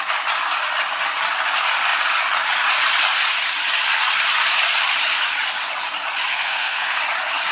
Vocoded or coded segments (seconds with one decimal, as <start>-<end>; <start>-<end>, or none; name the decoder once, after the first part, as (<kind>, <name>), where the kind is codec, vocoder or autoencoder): 6.3-7.0 (codec, SNAC)